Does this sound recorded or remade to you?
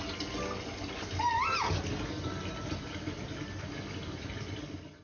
recorded